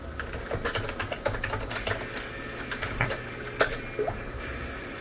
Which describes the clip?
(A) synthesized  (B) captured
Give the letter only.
B